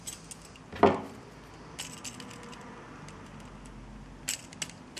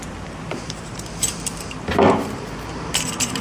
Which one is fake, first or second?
second